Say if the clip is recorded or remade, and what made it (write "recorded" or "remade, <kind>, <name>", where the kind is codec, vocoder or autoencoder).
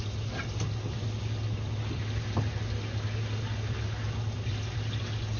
recorded